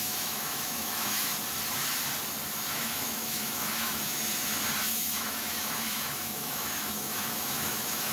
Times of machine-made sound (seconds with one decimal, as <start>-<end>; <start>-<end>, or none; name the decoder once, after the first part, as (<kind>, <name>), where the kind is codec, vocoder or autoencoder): 0.0-1.3 (autoencoder, DAC-VAE); 2.7-4.2; 4.8-8.1